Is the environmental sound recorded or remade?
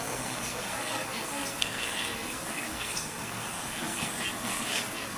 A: remade